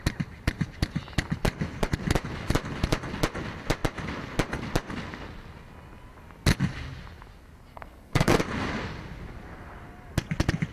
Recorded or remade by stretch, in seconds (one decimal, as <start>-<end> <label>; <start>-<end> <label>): 0.0-7.7 recorded; 7.7-8.4 remade; 8.4-10.7 recorded

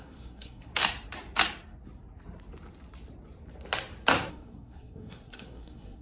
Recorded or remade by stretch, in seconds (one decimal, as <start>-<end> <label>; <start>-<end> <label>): 0.0-0.7 remade; 0.7-4.3 recorded; 4.3-6.0 remade

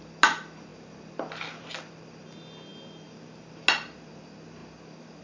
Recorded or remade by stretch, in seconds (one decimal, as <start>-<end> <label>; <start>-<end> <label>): 0.0-5.2 recorded

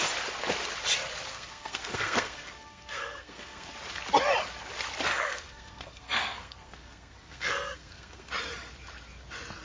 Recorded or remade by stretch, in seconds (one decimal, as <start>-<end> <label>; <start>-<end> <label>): 0.0-1.3 recorded; 1.3-3.7 remade; 3.7-5.1 recorded; 5.1-8.3 remade; 8.3-9.6 recorded